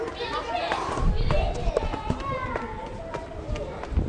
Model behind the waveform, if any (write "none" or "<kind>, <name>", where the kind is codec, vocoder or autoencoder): none